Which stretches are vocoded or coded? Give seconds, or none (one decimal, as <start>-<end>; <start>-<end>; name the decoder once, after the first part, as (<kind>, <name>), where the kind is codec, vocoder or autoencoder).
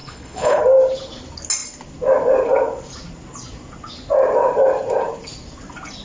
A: 0.0-0.6 (codec, HILCodec)